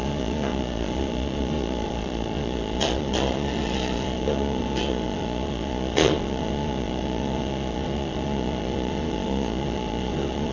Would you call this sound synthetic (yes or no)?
yes